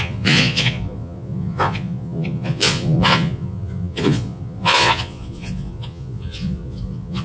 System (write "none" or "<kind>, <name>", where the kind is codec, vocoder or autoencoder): vocoder, Vocos